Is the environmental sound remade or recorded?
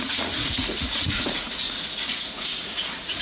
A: remade